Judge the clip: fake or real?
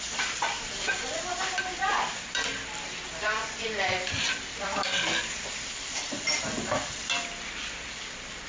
fake